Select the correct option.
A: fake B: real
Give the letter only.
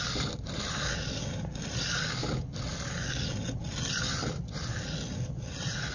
B